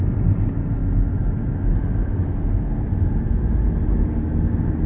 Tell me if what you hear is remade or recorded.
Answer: recorded